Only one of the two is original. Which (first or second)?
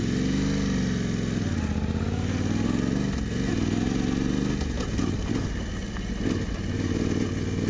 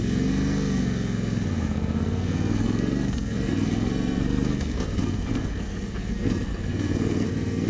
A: first